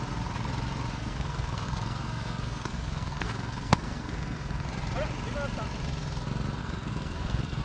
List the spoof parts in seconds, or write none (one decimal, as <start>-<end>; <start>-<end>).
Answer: 0.9-4.7; 6.6-7.6